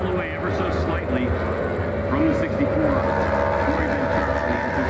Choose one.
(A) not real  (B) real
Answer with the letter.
B